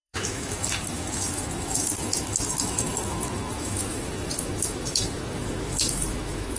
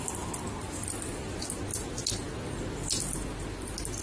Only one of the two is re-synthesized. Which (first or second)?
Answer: first